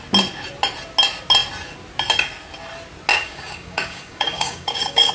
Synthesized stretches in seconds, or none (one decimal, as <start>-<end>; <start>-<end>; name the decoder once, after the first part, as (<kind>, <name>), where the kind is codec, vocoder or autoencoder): 3.1-5.1 (codec, DAC)